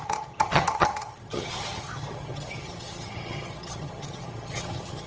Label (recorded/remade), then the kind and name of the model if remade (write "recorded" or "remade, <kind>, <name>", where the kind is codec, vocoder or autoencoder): remade, vocoder, HiFi-GAN